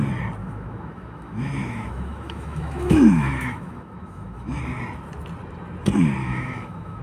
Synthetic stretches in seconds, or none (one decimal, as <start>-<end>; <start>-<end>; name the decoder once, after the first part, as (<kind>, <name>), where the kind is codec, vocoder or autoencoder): 0.4-4.6 (autoencoder, DAC-VAE); 6.2-7.0